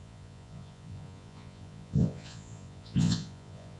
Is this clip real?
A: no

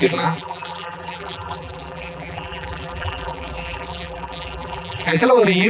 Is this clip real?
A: no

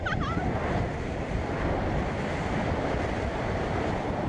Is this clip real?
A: no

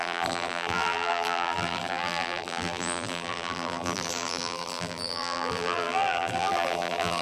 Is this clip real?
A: no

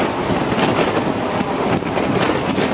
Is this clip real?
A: yes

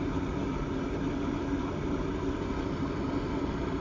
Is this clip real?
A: yes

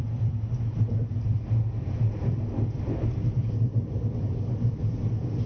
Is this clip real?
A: no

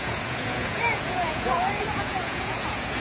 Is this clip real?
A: no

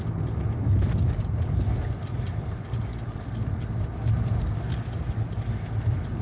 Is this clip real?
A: yes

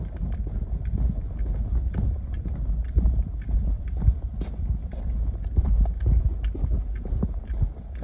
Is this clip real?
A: yes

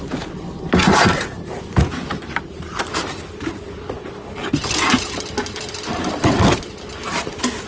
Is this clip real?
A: yes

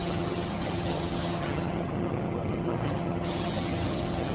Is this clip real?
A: no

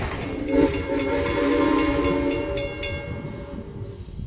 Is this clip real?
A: yes